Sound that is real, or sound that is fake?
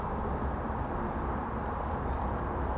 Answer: real